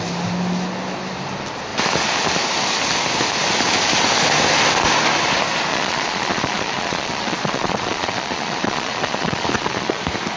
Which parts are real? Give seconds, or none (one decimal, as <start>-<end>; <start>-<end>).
0.0-5.7; 10.0-10.4